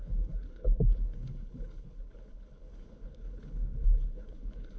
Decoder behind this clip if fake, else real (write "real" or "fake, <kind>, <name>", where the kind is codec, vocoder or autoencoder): fake, codec, HILCodec